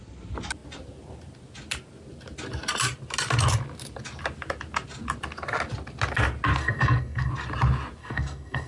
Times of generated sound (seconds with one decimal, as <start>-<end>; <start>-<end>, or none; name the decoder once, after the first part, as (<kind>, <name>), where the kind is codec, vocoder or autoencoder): 6.6-7.3 (codec, SNAC); 8.0-8.7